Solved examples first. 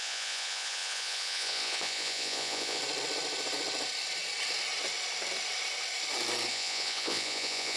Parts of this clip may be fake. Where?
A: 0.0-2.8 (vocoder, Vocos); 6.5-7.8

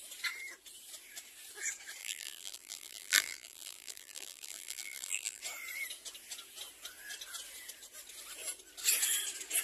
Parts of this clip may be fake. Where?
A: 2.0-5.4 (vocoder, BigVGAN v2)